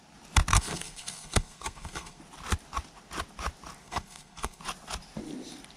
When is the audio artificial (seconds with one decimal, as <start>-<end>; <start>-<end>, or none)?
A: 0.5-2.2; 3.8-4.6